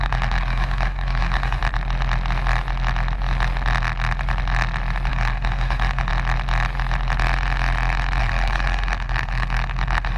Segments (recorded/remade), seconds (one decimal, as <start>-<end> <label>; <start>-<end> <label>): 0.0-1.6 remade; 1.6-5.1 recorded; 5.1-6.1 remade; 6.1-8.2 recorded; 8.2-10.2 remade